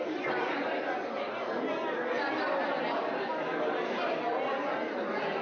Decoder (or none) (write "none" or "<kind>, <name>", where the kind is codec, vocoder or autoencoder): none